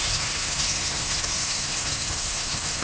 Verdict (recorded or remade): remade